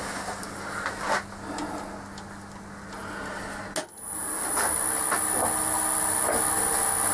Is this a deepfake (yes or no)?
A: no